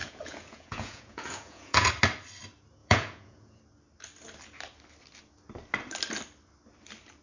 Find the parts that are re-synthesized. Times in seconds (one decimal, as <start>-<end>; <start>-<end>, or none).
0.0-1.9; 2.8-3.6